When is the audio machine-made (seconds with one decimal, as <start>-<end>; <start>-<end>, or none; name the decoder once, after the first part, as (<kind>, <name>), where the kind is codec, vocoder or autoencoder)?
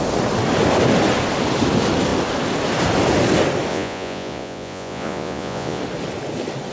3.7-5.8 (vocoder, Vocos)